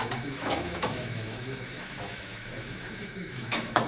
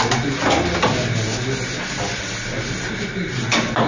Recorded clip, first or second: second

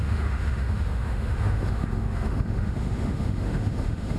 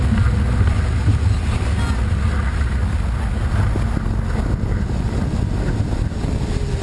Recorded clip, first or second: second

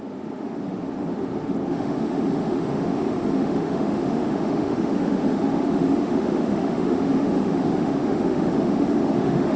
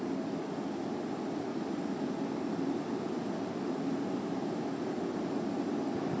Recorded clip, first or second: second